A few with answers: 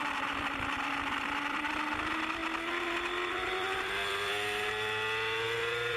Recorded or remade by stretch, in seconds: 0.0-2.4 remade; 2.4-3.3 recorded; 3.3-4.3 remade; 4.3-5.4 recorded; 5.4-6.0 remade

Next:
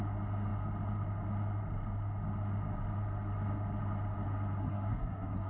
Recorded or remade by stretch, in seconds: 0.0-4.6 recorded; 4.6-5.5 remade

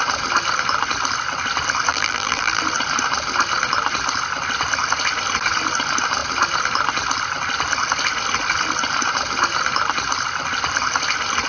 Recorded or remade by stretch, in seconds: 0.0-1.9 recorded; 1.9-2.6 remade; 2.6-11.5 recorded

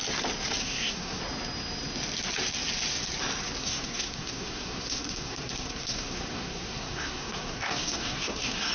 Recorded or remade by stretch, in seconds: 0.0-0.6 recorded; 0.6-1.2 remade; 1.2-3.6 recorded; 3.6-8.7 remade

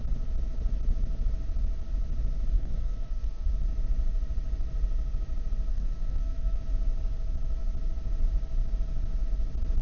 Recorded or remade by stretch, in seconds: 0.0-2.5 recorded; 2.5-3.5 remade; 3.5-5.7 recorded; 5.7-6.6 remade; 6.6-9.8 recorded